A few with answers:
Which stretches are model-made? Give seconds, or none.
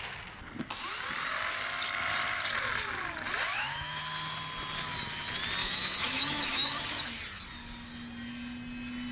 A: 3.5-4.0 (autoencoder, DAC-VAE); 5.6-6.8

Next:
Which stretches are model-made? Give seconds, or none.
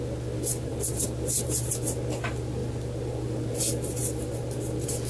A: 0.7-1.7 (vocoder, BigVGAN v2)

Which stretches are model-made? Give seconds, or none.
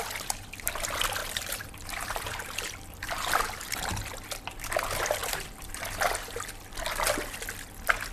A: 1.2-3.9 (vocoder, BigVGAN v2); 5.2-5.8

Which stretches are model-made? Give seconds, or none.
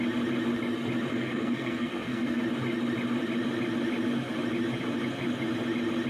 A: 1.1-2.4 (codec, SNAC)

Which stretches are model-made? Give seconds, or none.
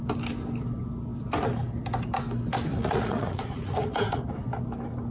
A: 2.7-4.2 (vocoder, Vocos)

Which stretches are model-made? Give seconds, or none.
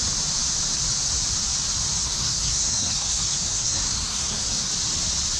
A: 2.0-4.7 (codec, SNAC)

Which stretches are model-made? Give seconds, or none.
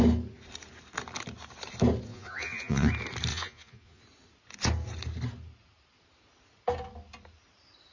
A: 2.1-2.9 (vocoder, Vocos); 3.3-4.0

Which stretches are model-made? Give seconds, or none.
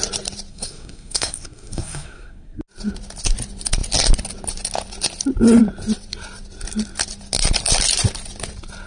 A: 0.5-2.6 (codec, SNAC)